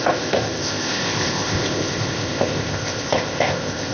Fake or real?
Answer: fake